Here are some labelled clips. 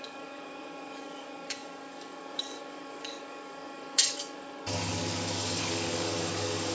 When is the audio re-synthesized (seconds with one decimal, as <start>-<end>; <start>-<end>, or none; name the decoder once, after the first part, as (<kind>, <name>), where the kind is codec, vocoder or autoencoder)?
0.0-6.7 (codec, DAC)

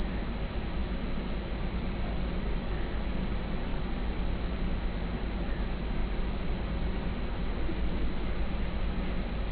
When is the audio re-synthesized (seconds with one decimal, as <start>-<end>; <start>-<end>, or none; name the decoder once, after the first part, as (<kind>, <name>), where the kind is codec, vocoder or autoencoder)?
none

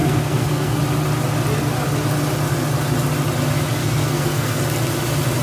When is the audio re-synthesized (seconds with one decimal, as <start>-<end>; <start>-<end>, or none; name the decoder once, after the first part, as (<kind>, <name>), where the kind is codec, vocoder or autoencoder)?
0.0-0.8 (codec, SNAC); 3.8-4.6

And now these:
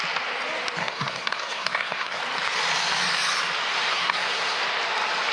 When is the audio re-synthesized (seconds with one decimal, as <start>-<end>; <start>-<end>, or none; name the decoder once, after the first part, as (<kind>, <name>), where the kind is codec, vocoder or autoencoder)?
0.8-2.2 (codec, SNAC); 3.9-4.6

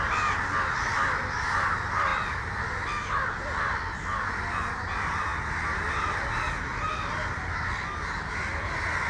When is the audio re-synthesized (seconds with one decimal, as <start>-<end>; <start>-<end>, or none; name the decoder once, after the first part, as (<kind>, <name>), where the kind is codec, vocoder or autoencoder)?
none

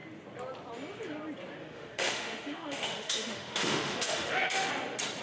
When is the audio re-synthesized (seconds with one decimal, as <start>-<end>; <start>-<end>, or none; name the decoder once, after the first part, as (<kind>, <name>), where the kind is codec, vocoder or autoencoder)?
1.6-4.7 (autoencoder, DAC-VAE)

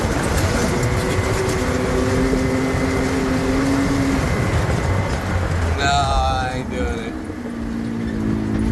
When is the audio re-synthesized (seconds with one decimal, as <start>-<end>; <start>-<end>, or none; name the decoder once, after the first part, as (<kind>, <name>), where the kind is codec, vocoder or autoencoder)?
none

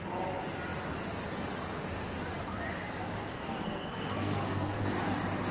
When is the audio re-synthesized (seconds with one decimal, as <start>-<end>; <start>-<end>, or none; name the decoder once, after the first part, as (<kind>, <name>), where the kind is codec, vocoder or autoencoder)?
3.4-4.8 (codec, SNAC)